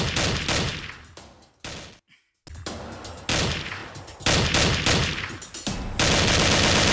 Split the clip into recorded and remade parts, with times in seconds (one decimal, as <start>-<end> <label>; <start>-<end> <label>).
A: 0.0-6.9 recorded